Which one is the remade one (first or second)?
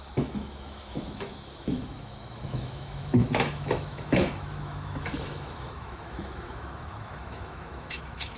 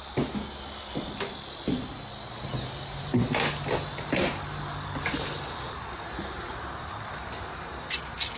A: first